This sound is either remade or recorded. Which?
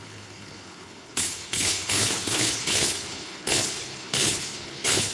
remade